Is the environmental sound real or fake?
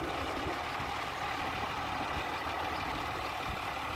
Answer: real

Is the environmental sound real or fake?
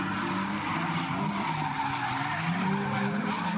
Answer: real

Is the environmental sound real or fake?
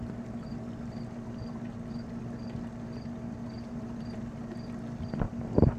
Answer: real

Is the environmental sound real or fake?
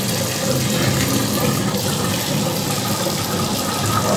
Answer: real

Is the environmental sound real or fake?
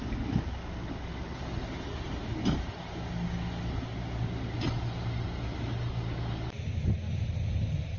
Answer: real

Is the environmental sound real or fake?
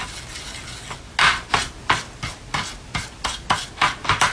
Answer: real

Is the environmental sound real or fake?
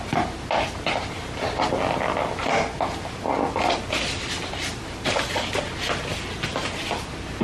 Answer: real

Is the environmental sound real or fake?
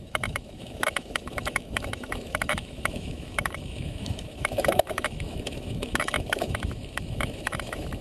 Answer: fake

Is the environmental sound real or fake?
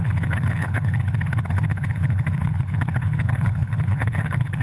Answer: fake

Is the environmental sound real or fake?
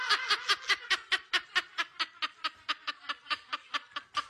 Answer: real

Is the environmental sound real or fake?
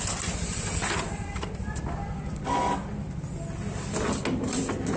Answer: real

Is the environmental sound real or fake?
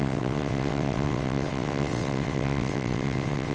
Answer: fake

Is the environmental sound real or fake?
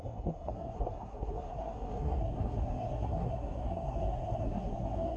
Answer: fake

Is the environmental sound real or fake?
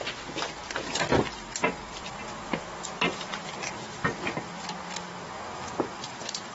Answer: real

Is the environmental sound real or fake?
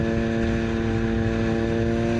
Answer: real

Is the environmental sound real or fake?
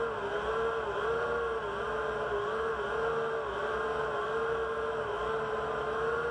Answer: real